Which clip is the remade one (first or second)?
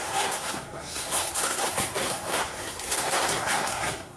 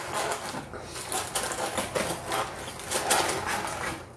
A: first